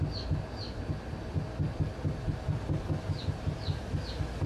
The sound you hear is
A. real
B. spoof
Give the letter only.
A